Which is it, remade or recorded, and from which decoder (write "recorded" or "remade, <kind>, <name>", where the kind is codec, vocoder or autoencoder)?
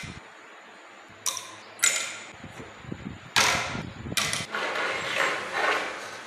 recorded